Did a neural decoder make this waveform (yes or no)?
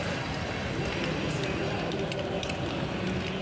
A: no